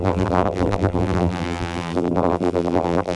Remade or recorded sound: remade